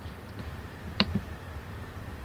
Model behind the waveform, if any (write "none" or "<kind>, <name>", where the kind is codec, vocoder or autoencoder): vocoder, BigVGAN v2